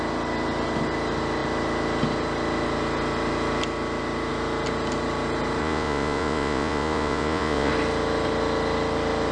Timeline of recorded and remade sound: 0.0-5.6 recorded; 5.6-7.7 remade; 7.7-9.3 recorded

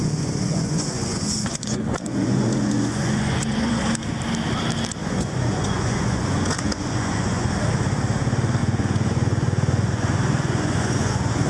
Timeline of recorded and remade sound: 0.0-3.8 remade; 3.8-5.0 recorded; 5.0-7.5 remade; 7.5-8.6 recorded; 8.6-11.5 remade

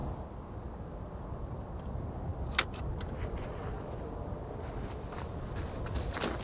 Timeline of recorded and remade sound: 0.0-6.4 recorded

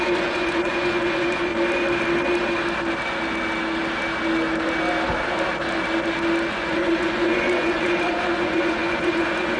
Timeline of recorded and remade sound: 0.0-1.5 remade; 1.5-6.5 recorded; 6.5-9.6 remade

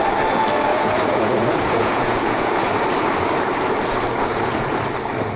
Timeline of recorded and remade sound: 0.0-0.7 recorded; 0.7-2.8 remade; 2.8-4.3 recorded; 4.3-4.8 remade; 4.8-5.4 recorded

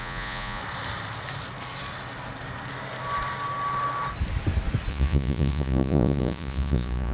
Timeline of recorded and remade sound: 0.0-0.6 remade; 0.6-4.9 recorded; 4.9-7.1 remade

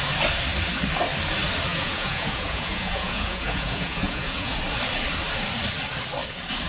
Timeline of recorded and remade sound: 0.0-1.7 recorded; 1.7-4.6 remade; 4.6-6.7 recorded